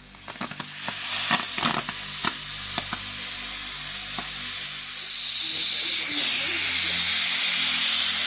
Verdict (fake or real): real